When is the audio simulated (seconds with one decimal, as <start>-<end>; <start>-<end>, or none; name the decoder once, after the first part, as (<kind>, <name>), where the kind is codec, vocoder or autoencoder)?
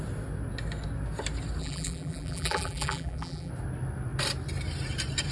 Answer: 1.6-3.5 (vocoder, BigVGAN v2)